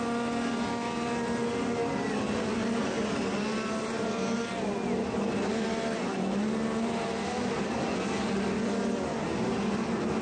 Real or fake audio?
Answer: real